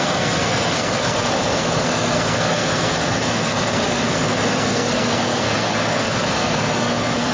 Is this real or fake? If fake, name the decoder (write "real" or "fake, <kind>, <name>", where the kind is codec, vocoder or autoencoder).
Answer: fake, codec, SNAC